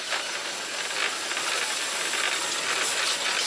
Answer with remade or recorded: recorded